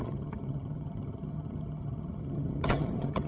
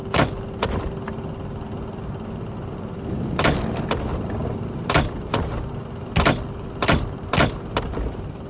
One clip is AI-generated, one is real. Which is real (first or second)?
second